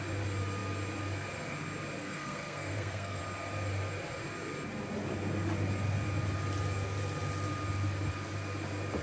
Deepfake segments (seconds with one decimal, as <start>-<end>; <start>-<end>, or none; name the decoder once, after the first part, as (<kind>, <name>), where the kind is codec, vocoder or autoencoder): 2.0-3.2 (codec, SNAC)